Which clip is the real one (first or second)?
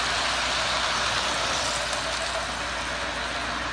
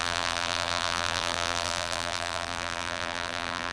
first